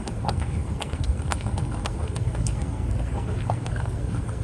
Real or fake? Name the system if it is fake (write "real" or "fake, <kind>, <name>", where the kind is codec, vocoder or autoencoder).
fake, codec, SNAC